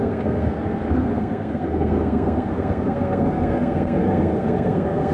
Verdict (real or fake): fake